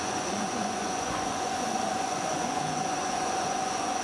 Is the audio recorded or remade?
remade